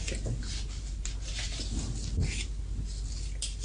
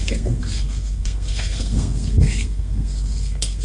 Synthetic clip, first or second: second